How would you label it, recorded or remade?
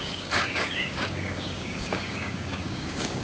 remade